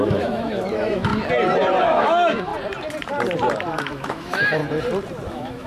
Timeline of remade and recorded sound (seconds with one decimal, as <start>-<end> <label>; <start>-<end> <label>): 0.0-1.1 remade; 1.1-1.8 recorded; 1.8-2.5 remade; 2.5-3.8 recorded; 3.8-4.6 remade; 4.6-5.3 recorded; 5.3-5.7 remade